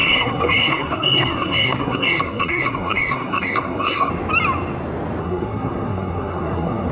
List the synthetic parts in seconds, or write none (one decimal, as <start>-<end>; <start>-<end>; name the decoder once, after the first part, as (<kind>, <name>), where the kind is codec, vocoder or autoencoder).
0.0-4.1 (codec, SNAC); 5.2-6.9